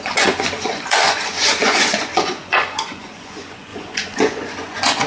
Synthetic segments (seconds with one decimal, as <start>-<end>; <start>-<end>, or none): 0.0-5.1